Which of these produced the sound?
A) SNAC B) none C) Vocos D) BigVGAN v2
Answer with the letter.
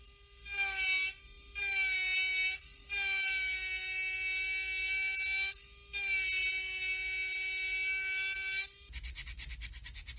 B